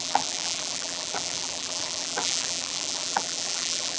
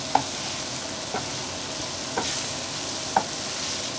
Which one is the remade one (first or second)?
first